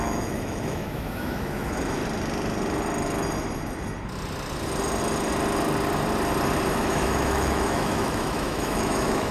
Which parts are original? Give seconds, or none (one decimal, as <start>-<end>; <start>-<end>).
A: 2.0-6.7